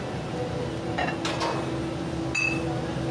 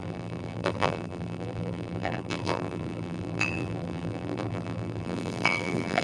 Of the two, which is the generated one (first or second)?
second